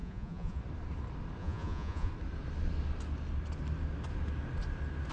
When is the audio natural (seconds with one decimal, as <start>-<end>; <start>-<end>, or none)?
0.6-1.4; 2.1-5.1